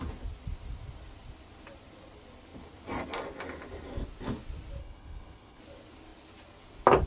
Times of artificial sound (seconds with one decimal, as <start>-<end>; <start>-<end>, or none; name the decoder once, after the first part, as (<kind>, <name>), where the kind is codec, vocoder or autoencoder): 4.8-5.6 (codec, HILCodec)